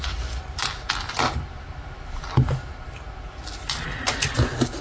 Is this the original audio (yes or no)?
yes